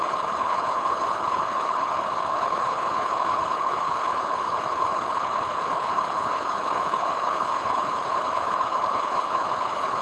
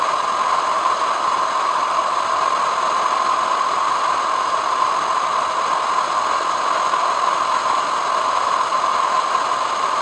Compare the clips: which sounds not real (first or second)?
first